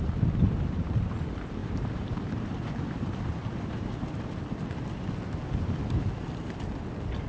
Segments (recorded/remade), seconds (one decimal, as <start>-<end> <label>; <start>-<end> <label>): 0.0-1.6 recorded; 1.6-4.1 remade; 4.1-7.3 recorded